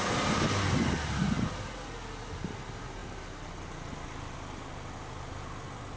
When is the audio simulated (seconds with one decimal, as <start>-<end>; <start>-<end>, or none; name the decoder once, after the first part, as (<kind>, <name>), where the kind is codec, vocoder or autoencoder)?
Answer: none